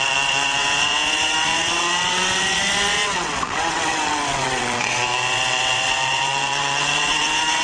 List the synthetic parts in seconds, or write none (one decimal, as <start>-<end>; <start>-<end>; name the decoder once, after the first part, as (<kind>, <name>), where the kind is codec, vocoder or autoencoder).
0.0-7.6 (vocoder, WaveNeXt)